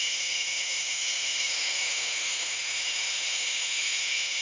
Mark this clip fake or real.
fake